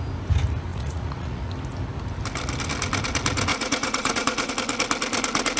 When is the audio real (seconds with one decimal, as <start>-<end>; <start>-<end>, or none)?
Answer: 0.0-0.7; 1.5-3.5; 4.5-5.6